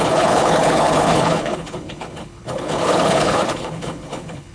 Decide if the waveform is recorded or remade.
remade